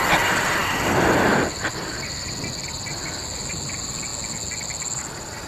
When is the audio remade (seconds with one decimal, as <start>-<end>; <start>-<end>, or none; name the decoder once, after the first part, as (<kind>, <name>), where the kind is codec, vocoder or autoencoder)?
none